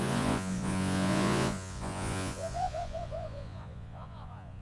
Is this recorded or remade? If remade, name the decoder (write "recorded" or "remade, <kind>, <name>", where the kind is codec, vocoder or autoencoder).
remade, vocoder, Vocos